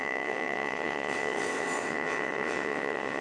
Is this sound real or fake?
fake